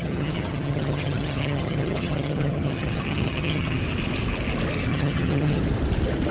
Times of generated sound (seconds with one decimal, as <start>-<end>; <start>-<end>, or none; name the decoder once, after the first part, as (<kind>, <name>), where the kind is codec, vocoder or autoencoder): 0.0-3.8 (vocoder, HiFi-GAN); 4.9-5.6

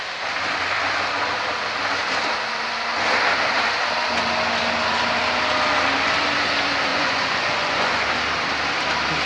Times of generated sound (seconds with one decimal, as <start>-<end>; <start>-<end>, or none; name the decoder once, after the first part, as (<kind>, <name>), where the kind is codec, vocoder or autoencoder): 6.9-8.1 (vocoder, Vocos)

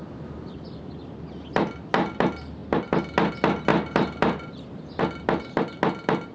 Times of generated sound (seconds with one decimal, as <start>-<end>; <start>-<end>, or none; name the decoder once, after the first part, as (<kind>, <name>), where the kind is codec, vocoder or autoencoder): 3.7-5.0 (vocoder, BigVGAN v2)

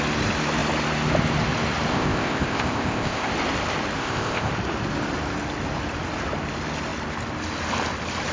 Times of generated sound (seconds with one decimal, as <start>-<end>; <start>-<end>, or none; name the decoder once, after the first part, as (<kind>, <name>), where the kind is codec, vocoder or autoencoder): 1.9-3.3 (codec, ZipCodec); 4.0-4.5

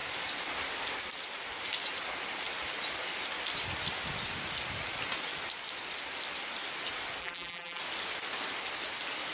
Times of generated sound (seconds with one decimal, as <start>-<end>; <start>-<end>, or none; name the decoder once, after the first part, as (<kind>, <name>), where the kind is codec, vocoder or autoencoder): 7.2-7.8 (vocoder, BigVGAN v2)

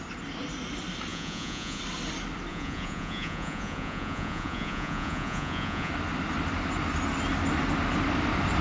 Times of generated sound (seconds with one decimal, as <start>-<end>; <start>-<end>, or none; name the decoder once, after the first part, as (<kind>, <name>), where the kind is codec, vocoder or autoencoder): 1.1-1.8 (vocoder, Vocos); 2.5-5.9

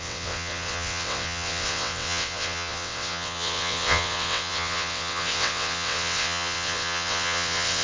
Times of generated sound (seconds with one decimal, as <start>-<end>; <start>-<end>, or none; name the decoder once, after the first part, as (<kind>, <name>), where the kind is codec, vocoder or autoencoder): 0.0-7.8 (vocoder, WaveNeXt)

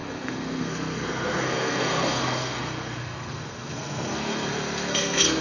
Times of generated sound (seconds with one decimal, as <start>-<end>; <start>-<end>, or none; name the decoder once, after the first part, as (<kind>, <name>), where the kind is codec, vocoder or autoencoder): 0.0-5.4 (codec, SNAC)